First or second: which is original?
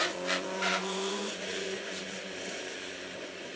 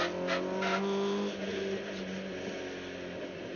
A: second